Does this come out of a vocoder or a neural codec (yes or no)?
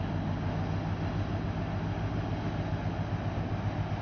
no